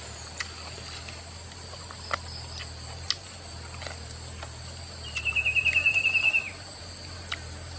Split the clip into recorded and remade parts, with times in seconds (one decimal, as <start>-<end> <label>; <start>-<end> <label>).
0.0-5.3 recorded; 5.3-6.8 remade; 6.8-7.8 recorded